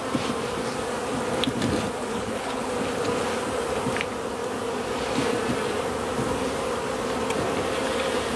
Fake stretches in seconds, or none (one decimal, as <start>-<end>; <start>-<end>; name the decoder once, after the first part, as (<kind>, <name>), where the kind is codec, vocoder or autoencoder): 2.1-2.7 (codec, HILCodec)